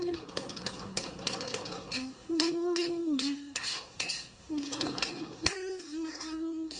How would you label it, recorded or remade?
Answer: remade